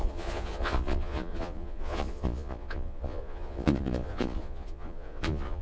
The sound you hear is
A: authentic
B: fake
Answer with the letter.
B